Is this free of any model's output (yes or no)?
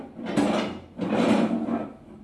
yes